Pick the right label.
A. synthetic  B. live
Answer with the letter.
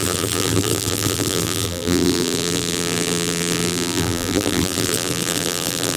A